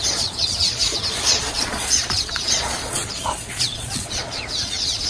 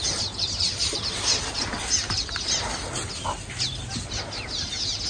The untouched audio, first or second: second